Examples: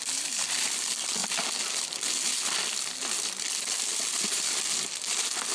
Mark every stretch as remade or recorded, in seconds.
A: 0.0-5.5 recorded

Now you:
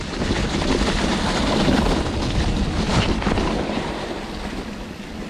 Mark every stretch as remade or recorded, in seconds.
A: 0.0-1.1 recorded; 1.1-2.2 remade; 2.2-2.9 recorded; 2.9-3.8 remade; 3.8-5.3 recorded

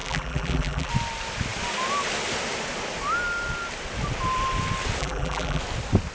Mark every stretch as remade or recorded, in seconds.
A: 0.0-0.9 remade; 0.9-5.0 recorded; 5.0-5.6 remade; 5.6-6.1 recorded